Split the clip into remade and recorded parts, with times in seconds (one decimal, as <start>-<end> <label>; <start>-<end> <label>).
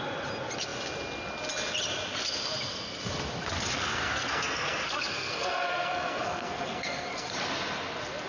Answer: 0.0-3.7 recorded; 3.7-7.3 remade; 7.3-8.3 recorded